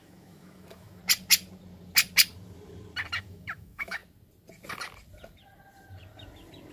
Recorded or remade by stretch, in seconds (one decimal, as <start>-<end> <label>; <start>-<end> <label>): 0.0-1.0 remade; 1.0-3.2 recorded; 3.2-4.0 remade; 4.0-6.7 recorded

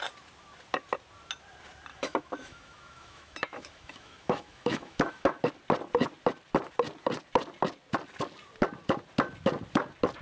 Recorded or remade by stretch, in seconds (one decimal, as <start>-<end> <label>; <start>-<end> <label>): 0.0-1.9 recorded; 1.9-5.4 remade; 5.4-10.2 recorded

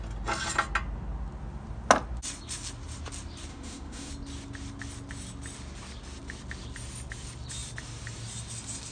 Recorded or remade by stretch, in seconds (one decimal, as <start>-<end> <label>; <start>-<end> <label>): 0.0-3.5 recorded; 3.5-4.1 remade; 4.1-8.9 recorded